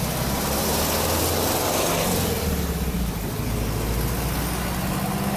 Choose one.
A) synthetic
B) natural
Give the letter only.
B